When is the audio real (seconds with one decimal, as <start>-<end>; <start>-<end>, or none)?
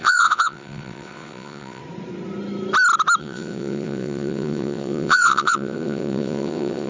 1.8-3.2